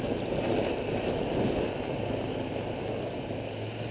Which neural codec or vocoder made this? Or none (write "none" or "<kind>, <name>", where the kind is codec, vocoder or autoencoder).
none